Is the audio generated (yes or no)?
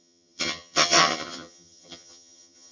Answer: yes